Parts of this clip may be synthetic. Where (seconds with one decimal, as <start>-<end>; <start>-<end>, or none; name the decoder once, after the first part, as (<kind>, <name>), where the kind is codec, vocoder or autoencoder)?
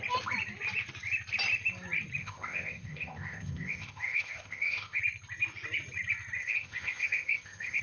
2.2-5.0 (codec, ZipCodec); 6.4-7.8